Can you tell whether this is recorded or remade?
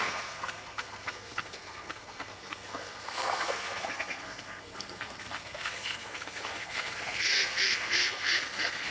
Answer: remade